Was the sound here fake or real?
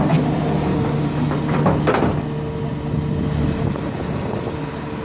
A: real